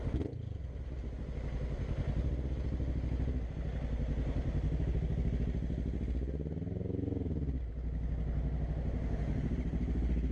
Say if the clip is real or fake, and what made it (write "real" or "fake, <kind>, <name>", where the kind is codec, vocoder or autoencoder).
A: real